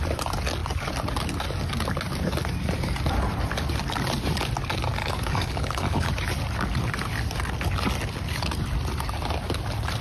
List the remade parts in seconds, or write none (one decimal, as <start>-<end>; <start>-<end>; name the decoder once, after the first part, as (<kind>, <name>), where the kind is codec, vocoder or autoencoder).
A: 5.0-6.1 (codec, DAC)